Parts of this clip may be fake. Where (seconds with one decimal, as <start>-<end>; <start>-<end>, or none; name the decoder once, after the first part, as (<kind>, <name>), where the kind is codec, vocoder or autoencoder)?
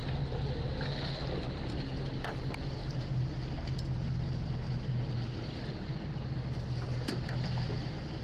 none